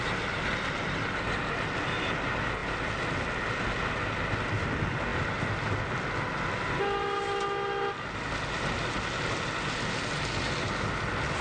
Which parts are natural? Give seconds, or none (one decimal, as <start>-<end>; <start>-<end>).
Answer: 0.0-11.4